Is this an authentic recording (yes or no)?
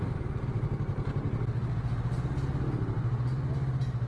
yes